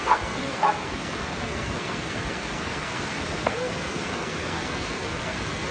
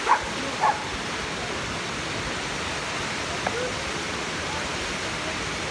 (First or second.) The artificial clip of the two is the first